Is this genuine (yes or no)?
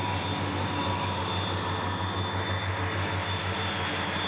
yes